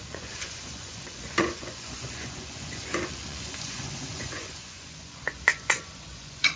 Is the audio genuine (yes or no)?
no